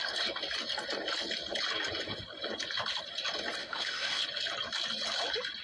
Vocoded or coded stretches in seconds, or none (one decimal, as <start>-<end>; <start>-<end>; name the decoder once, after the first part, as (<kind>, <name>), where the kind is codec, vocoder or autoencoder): 3.6-4.2 (autoencoder, DAC-VAE)